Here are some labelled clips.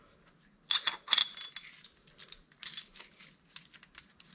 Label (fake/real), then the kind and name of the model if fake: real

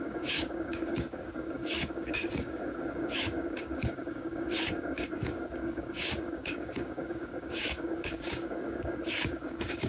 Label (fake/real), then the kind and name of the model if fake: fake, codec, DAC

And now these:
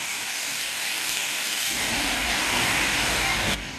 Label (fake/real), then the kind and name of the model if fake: fake, codec, DAC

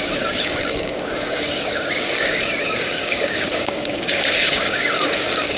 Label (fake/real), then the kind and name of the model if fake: fake, codec, DAC